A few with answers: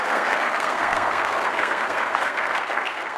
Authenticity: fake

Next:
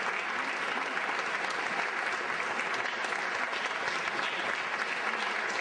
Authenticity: real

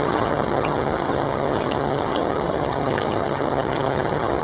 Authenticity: fake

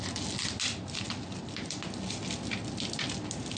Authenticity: real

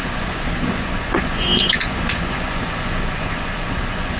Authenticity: fake